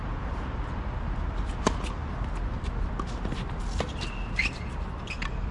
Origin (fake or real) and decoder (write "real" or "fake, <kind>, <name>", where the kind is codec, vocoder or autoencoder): real